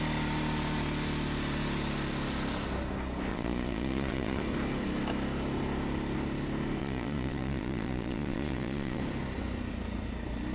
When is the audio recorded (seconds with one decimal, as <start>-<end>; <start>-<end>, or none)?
0.0-3.3; 4.4-6.8; 9.0-10.5